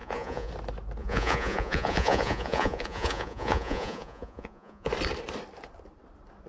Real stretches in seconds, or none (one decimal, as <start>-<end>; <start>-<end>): 0.5-1.0; 4.9-6.5

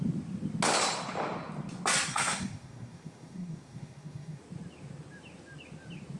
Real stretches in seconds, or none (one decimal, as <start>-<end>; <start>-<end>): 0.0-2.1; 4.4-6.2

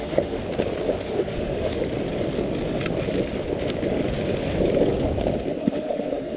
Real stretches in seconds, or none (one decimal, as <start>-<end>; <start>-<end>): 0.4-1.0; 1.8-5.6

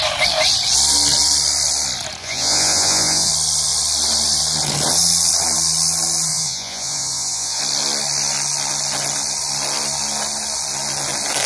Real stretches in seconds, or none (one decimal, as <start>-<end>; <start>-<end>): 0.0-2.2; 3.3-6.3; 7.6-11.5

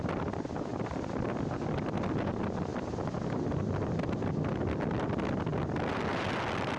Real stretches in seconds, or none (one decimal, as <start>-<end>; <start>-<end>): 0.0-0.7; 1.8-6.8

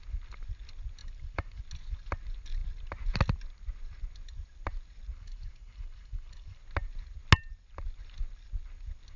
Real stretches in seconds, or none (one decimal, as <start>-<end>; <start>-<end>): 0.0-1.0; 1.6-5.1; 6.6-9.2

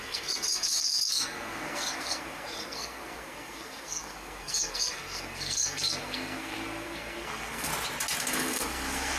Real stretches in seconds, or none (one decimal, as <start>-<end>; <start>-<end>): 7.7-8.2

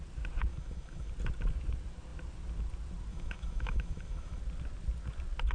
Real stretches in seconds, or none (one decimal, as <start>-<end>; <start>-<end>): 0.0-0.5; 1.1-3.1; 4.4-5.5